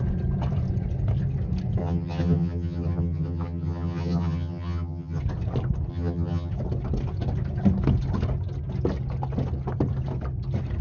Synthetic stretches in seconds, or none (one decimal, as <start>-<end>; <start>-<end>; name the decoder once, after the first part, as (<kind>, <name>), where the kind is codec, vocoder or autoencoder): 1.8-5.2 (vocoder, HiFi-GAN); 5.9-6.5